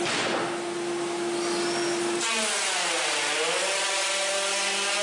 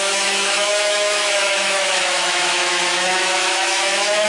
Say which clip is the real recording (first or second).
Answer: first